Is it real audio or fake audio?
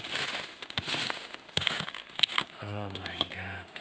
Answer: fake